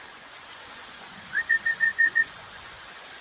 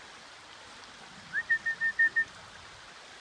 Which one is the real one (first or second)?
second